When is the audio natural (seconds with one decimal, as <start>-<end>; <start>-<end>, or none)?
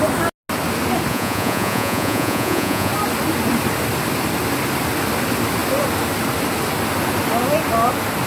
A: 0.0-1.1; 2.9-8.3